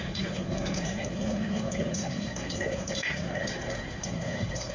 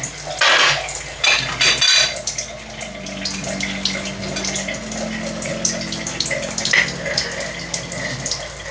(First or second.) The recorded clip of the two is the second